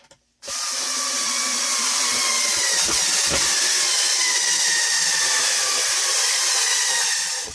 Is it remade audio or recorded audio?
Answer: remade